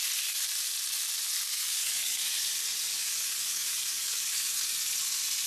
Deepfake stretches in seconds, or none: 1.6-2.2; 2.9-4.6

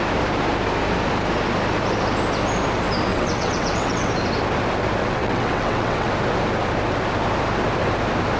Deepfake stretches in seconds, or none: 3.1-4.1; 5.0-6.1

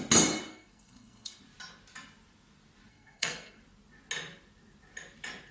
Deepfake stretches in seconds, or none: 0.5-1.4; 2.9-3.6

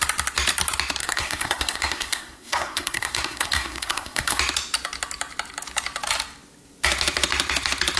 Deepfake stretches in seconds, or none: 1.0-4.4

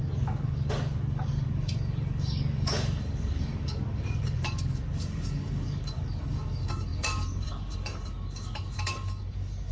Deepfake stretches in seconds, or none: 0.0-9.7

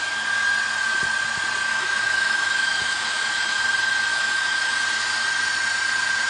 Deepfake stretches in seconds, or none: 1.7-3.6; 4.1-4.7

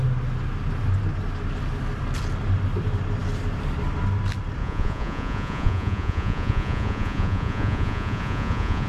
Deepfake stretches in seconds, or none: 4.6-8.9